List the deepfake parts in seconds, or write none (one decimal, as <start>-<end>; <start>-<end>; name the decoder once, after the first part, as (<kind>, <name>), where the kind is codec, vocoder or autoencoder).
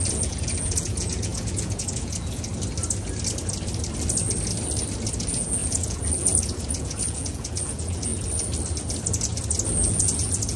0.0-2.5 (vocoder, Vocos); 5.1-8.1; 9.8-10.6